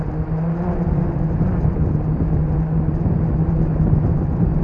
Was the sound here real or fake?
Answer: real